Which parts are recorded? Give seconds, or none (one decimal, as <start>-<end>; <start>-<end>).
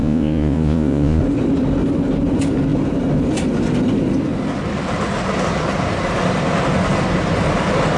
1.2-8.0